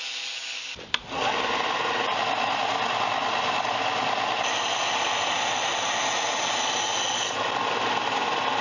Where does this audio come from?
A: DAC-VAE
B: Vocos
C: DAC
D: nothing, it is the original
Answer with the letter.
D